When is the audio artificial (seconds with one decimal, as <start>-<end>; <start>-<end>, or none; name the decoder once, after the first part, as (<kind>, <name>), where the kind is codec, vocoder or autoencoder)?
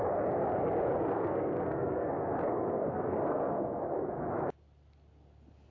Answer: 1.1-3.8 (codec, SNAC)